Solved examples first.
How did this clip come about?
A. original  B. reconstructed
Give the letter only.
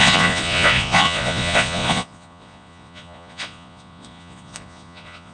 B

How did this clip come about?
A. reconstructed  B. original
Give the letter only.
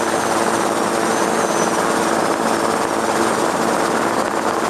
B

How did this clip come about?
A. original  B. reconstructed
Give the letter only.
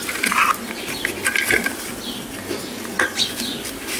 A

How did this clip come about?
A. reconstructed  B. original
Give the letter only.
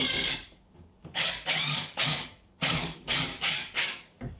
A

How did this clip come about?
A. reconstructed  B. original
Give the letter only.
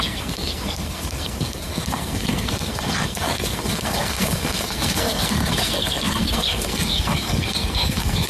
A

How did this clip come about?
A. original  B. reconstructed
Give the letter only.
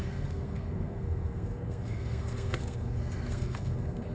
B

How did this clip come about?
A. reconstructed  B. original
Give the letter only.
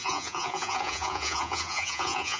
A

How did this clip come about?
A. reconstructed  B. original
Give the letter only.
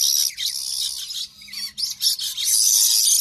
B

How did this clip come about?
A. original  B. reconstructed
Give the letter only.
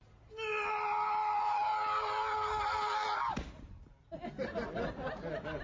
A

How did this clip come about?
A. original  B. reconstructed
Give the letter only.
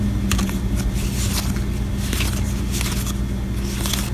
A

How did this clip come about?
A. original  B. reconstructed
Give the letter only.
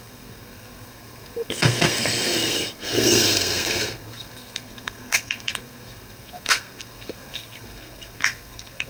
B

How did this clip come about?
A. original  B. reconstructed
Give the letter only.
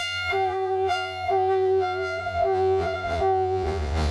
B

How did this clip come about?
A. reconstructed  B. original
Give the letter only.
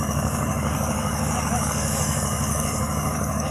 A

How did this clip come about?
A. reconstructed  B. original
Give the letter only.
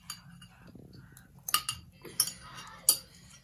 B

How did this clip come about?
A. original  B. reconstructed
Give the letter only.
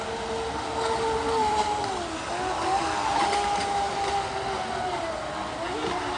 A